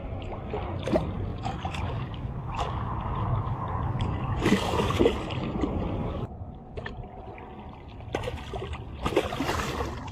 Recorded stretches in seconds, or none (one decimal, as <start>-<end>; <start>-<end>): 0.0-1.3; 5.0-6.0; 6.9-10.1